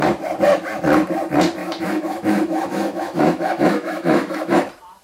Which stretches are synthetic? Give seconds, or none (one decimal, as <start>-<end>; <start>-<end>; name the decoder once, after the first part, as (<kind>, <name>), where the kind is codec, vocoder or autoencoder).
1.6-4.6 (autoencoder, DAC-VAE)